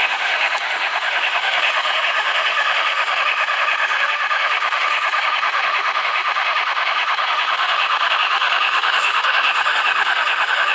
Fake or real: fake